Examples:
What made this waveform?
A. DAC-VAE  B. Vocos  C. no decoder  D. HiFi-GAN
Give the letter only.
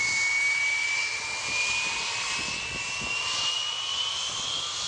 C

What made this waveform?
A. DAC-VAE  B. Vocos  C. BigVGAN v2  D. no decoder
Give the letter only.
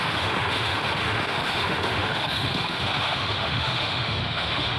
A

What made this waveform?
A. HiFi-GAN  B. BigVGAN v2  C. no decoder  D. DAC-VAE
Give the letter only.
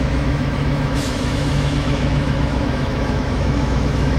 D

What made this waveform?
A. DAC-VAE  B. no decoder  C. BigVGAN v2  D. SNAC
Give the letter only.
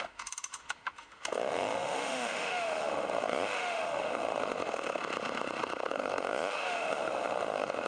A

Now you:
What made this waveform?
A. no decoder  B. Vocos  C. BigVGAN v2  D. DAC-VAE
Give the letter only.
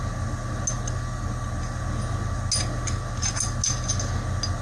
A